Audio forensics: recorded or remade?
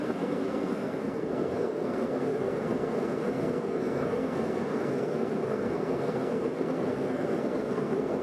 remade